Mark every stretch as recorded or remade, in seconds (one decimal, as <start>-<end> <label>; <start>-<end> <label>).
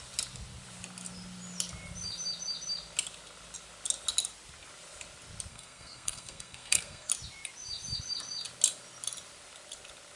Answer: 0.0-5.5 recorded; 5.5-7.1 remade; 7.1-10.2 recorded